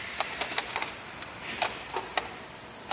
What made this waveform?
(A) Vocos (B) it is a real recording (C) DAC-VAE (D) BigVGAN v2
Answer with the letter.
B